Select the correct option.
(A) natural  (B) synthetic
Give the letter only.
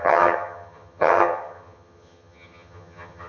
B